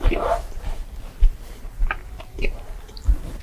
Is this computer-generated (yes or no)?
yes